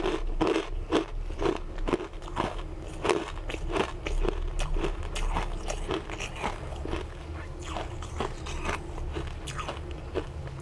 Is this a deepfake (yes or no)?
no